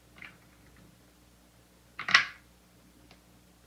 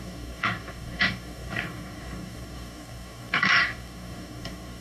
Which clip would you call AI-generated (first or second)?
second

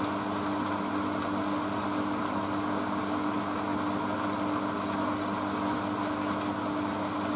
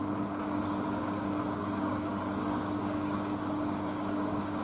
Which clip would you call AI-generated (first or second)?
second